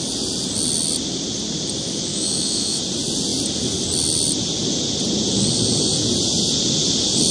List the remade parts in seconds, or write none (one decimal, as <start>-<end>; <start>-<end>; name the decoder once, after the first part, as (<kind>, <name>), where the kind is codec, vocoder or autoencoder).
2.1-2.8 (autoencoder, DAC-VAE)